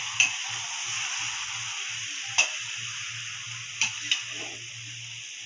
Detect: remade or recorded recorded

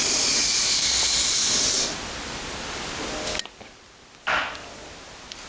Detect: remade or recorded recorded